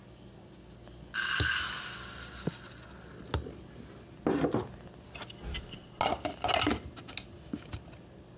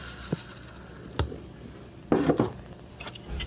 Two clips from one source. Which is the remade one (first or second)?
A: second